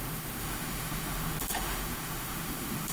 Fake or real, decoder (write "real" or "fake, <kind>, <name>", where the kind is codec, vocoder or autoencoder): fake, autoencoder, DAC-VAE